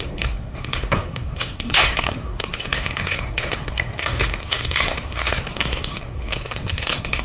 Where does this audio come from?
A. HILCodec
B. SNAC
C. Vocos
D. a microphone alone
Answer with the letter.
B